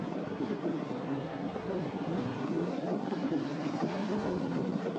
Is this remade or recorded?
remade